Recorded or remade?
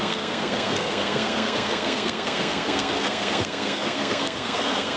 remade